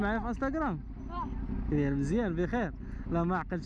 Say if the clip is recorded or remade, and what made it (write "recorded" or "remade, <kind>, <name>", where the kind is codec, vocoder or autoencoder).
recorded